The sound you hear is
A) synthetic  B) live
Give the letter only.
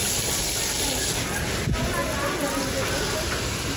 B